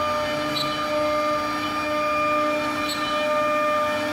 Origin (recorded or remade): recorded